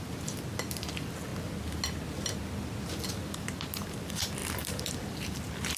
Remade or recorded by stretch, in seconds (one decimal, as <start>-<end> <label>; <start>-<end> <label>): 0.0-1.3 remade; 1.3-3.1 recorded; 3.1-5.8 remade